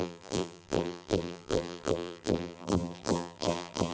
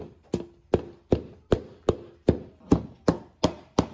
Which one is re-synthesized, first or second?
first